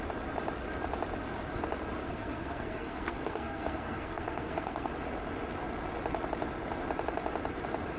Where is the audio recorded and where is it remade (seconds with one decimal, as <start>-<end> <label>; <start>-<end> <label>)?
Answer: 0.0-2.0 recorded; 2.0-4.9 remade; 4.9-8.0 recorded